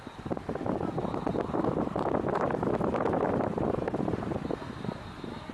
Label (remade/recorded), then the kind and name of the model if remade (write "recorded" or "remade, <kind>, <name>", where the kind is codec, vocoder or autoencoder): recorded